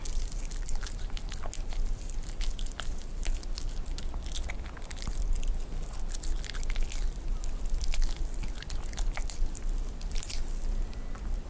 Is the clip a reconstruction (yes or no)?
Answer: no